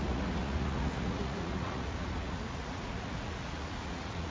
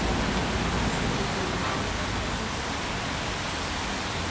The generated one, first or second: first